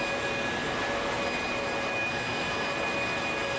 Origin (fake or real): real